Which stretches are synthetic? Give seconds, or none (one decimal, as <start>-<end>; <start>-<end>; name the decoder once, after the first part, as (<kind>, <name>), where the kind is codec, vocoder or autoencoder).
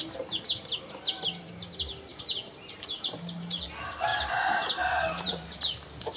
2.1-3.6 (vocoder, BigVGAN v2); 4.1-6.2